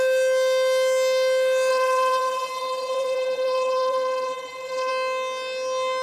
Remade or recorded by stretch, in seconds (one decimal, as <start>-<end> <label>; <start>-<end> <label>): 0.0-1.7 recorded; 1.7-4.9 remade; 4.9-6.0 recorded